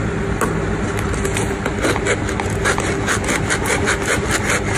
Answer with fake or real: real